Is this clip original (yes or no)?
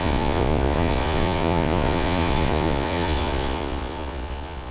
no